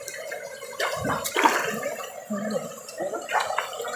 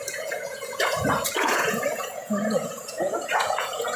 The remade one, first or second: second